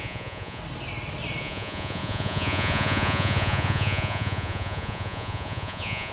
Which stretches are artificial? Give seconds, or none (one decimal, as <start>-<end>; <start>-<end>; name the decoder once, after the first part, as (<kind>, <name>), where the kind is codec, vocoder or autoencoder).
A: 0.0-0.6 (vocoder, Vocos); 1.4-6.1